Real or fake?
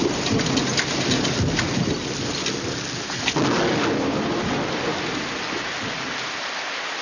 real